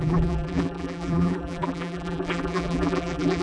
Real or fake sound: fake